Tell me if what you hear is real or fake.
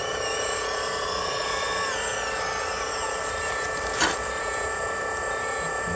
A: fake